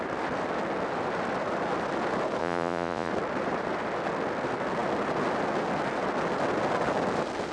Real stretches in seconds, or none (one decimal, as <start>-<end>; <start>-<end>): 0.0-2.4; 3.1-7.5